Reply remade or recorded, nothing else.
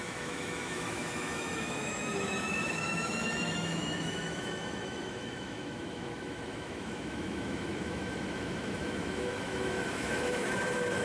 remade